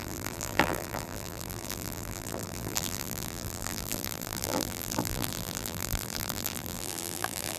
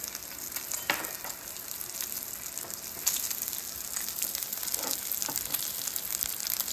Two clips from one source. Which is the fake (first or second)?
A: first